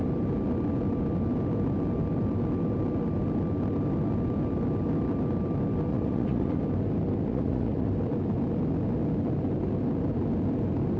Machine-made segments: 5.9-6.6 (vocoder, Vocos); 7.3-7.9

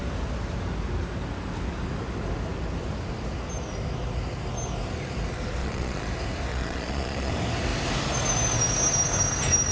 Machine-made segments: 5.6-6.1 (vocoder, Vocos); 6.5-7.3